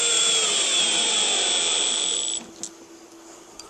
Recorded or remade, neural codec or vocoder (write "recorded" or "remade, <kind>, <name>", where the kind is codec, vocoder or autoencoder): recorded